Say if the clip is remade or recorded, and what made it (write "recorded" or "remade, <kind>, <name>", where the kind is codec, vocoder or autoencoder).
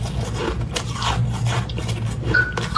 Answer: recorded